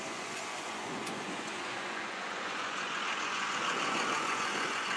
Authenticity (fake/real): fake